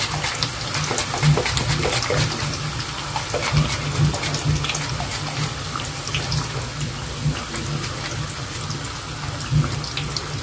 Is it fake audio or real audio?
real